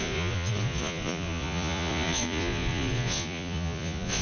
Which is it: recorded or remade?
remade